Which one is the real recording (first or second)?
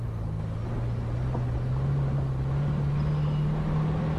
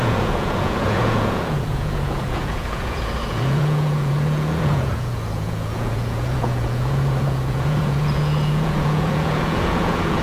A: first